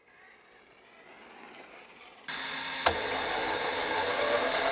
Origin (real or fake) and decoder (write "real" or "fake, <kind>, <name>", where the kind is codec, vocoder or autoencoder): real